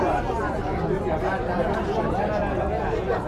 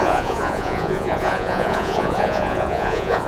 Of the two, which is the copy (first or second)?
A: second